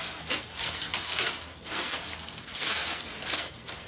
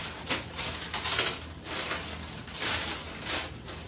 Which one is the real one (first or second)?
second